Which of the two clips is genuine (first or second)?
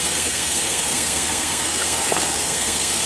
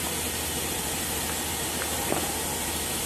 second